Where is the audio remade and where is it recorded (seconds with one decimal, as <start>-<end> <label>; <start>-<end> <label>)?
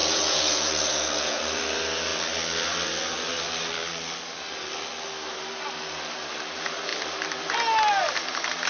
0.0-1.4 remade; 1.4-8.7 recorded